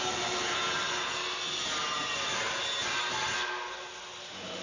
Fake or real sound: real